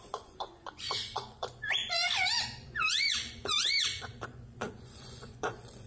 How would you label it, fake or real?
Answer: fake